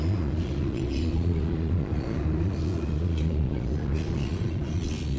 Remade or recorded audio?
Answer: remade